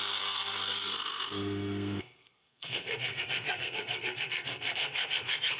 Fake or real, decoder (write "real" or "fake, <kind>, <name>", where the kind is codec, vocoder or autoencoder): fake, codec, SNAC